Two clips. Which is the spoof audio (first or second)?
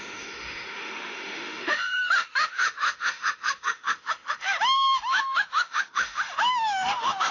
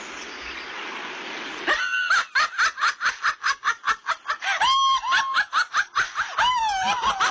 first